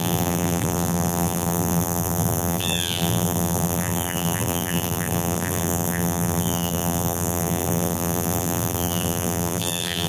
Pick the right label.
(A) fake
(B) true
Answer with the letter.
A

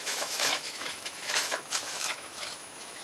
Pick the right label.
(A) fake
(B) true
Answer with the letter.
A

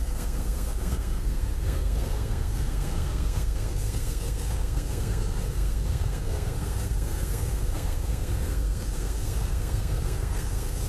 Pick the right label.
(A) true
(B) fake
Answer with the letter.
B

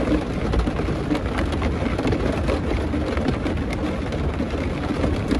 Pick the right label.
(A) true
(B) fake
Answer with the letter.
A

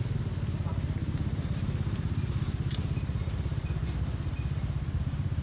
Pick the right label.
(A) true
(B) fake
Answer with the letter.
A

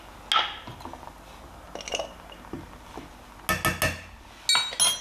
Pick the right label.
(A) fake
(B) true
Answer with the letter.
B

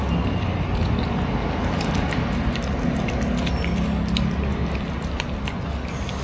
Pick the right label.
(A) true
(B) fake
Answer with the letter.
A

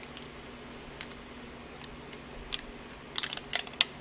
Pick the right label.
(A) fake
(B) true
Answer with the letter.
B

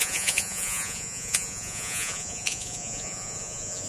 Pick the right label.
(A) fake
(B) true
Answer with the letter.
A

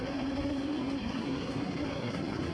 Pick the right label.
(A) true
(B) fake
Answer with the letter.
B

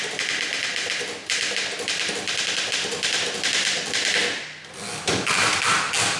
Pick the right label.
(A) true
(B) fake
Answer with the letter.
A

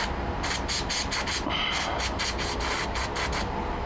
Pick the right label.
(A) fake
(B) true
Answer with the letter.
B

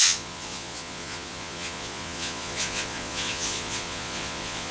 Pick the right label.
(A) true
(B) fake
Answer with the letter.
B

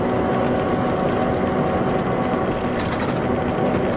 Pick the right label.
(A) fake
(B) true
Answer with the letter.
B